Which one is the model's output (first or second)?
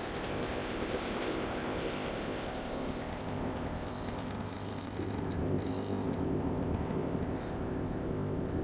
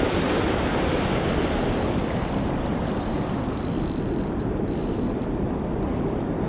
first